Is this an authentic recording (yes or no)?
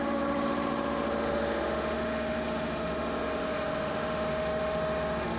no